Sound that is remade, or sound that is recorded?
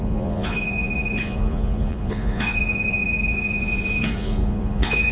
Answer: remade